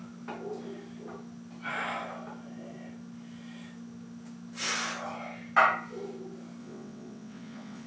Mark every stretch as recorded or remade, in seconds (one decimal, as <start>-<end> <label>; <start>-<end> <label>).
0.0-6.6 recorded; 6.6-7.9 remade